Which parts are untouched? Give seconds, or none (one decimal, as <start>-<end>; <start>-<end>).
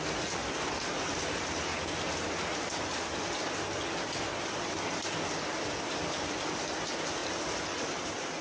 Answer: 0.0-8.4